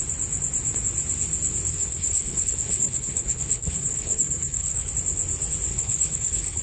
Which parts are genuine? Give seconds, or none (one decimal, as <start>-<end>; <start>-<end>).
0.0-1.7; 4.9-5.7